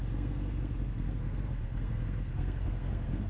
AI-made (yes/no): yes